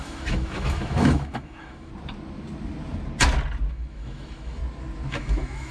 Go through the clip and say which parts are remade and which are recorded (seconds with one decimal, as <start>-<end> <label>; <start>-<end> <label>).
0.0-1.9 remade; 1.9-3.7 recorded; 3.7-4.6 remade; 4.6-5.1 recorded; 5.1-5.7 remade

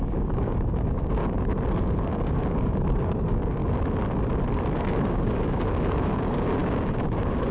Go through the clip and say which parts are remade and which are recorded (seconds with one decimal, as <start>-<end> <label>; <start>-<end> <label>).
0.0-1.2 remade; 1.2-1.8 recorded; 1.8-3.6 remade; 3.6-4.8 recorded; 4.8-7.5 remade